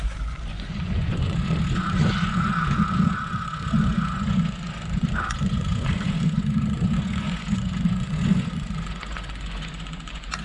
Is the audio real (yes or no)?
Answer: no